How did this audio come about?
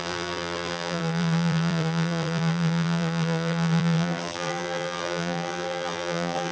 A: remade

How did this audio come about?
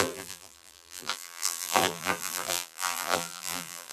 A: remade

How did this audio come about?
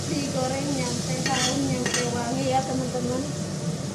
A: recorded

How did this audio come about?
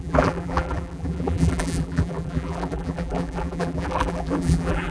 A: remade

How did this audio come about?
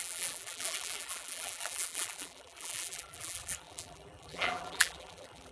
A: remade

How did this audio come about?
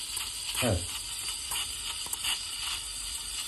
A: recorded